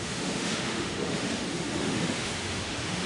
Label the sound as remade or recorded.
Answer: remade